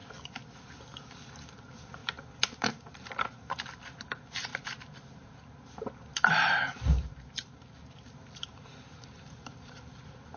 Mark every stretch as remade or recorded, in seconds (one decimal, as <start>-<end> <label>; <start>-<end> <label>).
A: 0.0-1.3 recorded; 1.3-2.0 remade; 2.0-2.6 recorded; 2.6-10.4 remade